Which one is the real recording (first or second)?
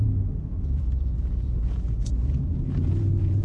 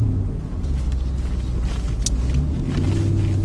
second